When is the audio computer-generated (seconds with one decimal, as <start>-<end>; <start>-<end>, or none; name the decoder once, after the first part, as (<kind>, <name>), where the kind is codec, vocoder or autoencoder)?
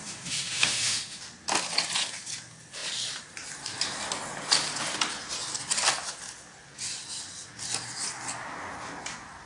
0.0-1.2 (autoencoder, DAC-VAE)